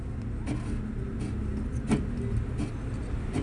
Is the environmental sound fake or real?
real